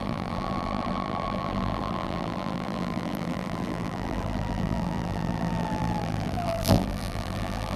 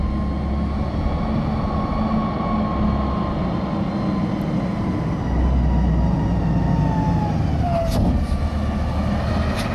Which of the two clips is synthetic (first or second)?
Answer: first